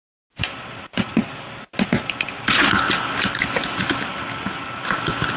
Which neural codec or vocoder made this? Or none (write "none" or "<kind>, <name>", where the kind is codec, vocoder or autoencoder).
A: none